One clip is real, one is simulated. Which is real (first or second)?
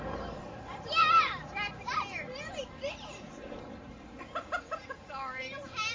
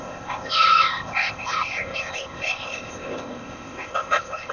first